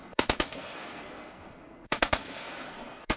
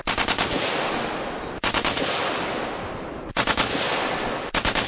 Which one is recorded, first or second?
second